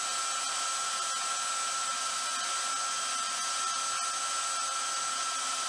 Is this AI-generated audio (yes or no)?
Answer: no